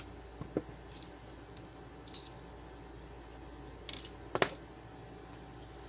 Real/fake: real